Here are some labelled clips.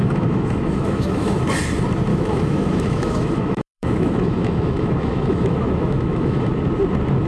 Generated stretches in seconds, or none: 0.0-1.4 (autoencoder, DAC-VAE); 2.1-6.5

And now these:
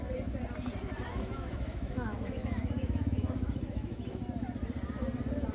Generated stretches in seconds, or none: 1.1-4.2 (autoencoder, DAC-VAE)